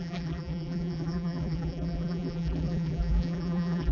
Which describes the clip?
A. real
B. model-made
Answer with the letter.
B